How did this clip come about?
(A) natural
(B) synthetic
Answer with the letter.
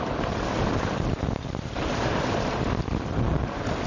A